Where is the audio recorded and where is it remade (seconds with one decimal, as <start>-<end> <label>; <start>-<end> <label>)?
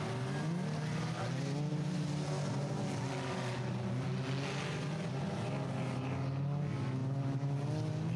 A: 0.0-8.2 recorded